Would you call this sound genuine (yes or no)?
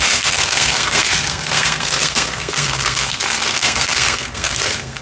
no